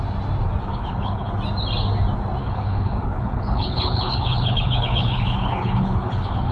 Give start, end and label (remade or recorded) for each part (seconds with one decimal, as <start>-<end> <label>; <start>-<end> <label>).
0.0-0.7 recorded; 0.7-1.3 remade; 1.3-2.4 recorded; 2.4-6.5 remade